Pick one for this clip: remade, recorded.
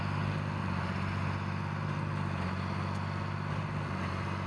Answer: recorded